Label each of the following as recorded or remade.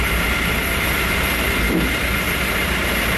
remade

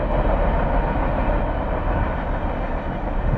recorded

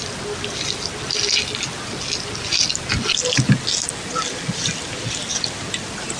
recorded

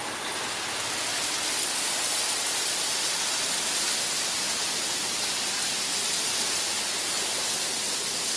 recorded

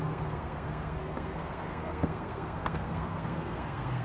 remade